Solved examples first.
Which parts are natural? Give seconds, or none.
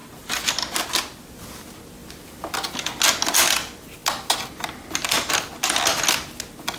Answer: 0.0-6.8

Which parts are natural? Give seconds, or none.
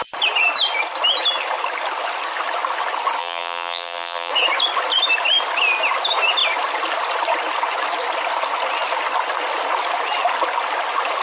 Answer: 0.0-3.2; 4.3-11.2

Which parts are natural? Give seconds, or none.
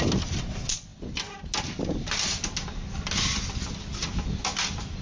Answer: 0.0-5.0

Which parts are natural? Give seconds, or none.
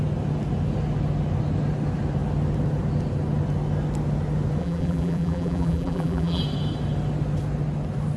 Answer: 0.0-4.6; 6.4-8.2